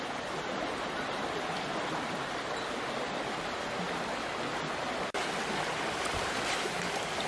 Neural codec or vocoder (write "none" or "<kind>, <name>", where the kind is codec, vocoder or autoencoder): none